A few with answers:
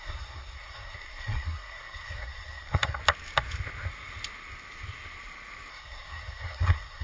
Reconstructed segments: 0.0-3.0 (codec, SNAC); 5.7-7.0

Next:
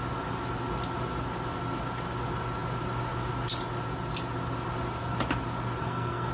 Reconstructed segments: 5.8-6.3 (codec, SNAC)

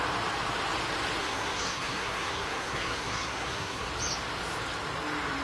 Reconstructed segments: 1.2-3.9 (codec, SNAC)